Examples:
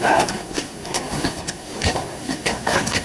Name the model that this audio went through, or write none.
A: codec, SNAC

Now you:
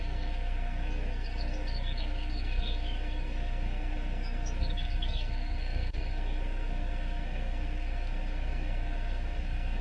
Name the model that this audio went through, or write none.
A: codec, SNAC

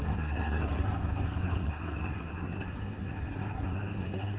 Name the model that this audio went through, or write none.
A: codec, SNAC